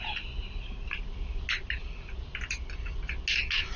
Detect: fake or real real